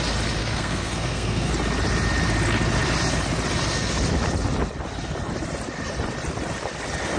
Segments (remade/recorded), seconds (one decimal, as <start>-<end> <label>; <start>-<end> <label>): 0.0-0.4 recorded; 0.4-1.5 remade; 1.5-7.2 recorded